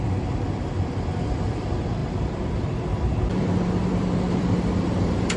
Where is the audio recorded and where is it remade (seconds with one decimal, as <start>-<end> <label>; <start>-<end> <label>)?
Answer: 0.0-5.4 remade